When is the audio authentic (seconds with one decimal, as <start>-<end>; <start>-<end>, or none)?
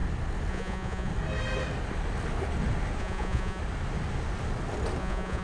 0.0-0.5; 1.1-3.0; 3.6-5.0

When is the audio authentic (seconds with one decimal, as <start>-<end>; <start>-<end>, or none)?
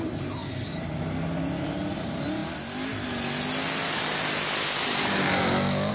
0.4-2.0; 2.4-5.9